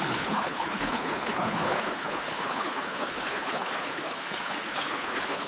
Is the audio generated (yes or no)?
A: yes